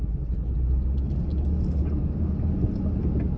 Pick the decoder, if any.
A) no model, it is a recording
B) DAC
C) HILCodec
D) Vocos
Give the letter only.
A